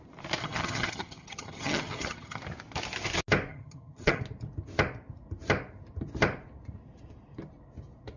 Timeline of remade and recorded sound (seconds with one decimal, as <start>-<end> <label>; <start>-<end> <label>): 0.0-0.4 recorded; 0.4-2.4 remade; 2.4-3.5 recorded; 3.5-4.2 remade; 4.2-8.2 recorded